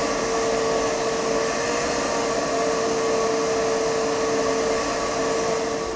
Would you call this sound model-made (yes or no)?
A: no